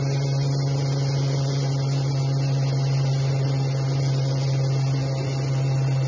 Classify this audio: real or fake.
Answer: real